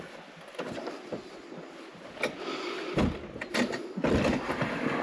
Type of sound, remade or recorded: recorded